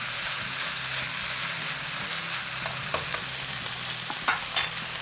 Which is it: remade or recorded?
recorded